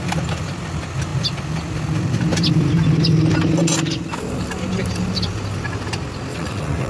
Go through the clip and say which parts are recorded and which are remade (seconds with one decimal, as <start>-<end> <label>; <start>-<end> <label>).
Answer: 0.0-6.3 recorded; 6.3-6.9 remade